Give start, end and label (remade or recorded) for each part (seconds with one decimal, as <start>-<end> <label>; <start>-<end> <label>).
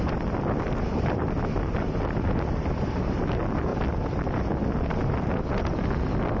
0.0-6.4 recorded